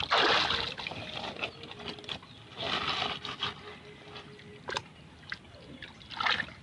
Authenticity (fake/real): real